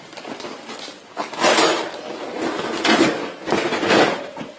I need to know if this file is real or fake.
real